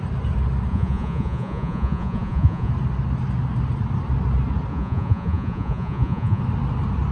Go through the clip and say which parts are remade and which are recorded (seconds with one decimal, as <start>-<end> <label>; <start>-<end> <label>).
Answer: 0.0-0.7 recorded; 0.7-2.7 remade; 2.7-4.7 recorded; 4.7-6.4 remade; 6.4-7.1 recorded